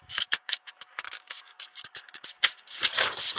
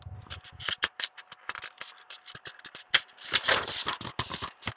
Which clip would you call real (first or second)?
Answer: second